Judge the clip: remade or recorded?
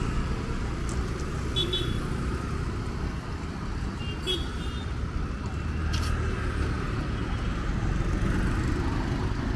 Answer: recorded